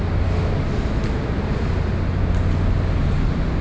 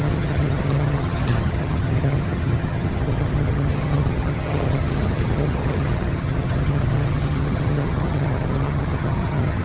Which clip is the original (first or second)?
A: first